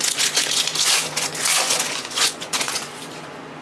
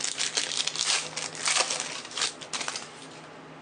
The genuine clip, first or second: second